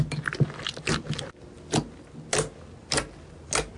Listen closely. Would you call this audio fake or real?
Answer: real